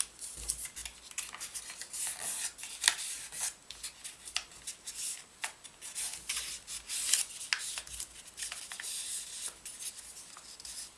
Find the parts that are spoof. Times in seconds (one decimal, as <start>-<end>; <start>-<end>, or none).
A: none